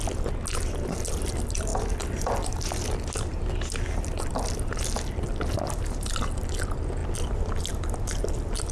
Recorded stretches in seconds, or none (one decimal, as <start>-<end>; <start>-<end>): 0.0-8.7